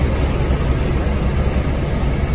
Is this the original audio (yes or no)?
yes